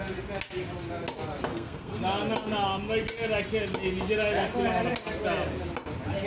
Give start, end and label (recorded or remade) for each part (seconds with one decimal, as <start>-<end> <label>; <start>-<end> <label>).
0.0-1.5 recorded; 1.5-2.0 remade; 2.0-6.3 recorded